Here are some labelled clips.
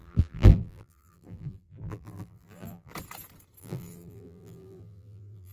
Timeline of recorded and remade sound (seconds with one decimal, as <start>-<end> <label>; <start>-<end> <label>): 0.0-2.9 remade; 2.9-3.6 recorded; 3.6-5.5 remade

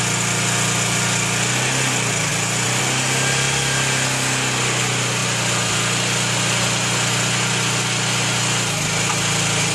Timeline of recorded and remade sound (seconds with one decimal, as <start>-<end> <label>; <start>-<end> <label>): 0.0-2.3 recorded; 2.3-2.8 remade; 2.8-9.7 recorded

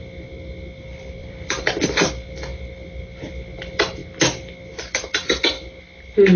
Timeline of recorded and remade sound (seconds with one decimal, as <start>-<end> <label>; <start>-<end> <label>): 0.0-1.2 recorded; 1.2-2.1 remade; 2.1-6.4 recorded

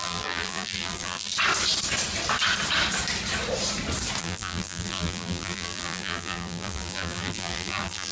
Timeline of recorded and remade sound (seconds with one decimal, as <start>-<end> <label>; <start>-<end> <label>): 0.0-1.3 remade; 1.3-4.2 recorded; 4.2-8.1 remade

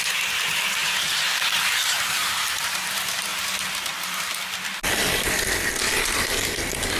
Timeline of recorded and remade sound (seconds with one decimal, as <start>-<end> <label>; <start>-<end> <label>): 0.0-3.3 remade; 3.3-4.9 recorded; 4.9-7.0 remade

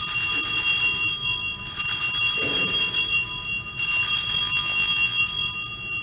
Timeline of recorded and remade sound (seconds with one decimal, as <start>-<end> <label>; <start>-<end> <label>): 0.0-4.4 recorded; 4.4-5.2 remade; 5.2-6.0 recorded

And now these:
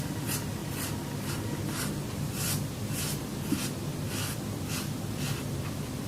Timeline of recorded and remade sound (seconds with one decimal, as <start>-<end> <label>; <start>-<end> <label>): 0.0-0.6 remade; 0.6-2.1 recorded; 2.1-3.3 remade; 3.3-6.1 recorded